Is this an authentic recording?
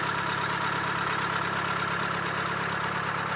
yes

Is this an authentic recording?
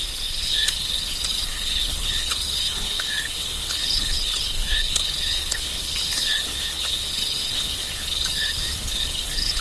no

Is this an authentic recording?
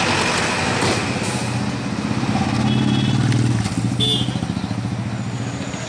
yes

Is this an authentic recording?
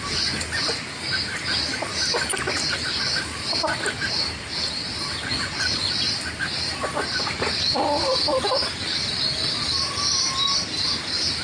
yes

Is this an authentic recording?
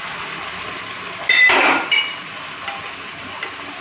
yes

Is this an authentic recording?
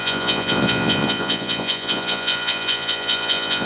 no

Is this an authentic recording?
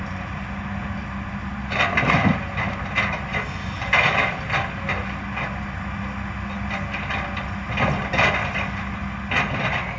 yes